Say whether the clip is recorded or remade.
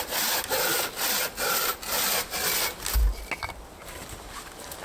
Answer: recorded